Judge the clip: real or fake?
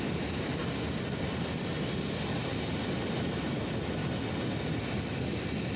real